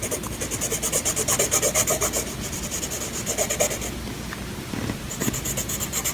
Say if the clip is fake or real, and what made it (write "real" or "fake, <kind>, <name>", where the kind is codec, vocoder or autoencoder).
real